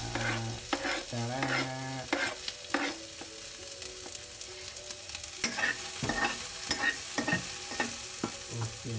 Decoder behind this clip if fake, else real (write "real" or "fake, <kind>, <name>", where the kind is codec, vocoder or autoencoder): real